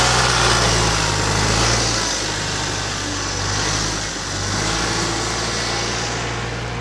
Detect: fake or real real